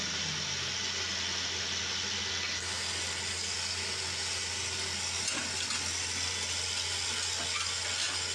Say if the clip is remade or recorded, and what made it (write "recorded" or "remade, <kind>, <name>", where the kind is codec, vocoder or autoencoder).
recorded